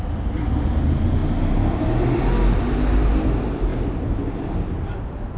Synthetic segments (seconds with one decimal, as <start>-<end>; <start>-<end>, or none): none